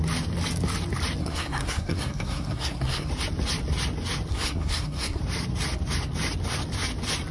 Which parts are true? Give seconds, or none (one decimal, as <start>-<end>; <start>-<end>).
0.0-1.2; 3.1-4.3; 5.2-7.3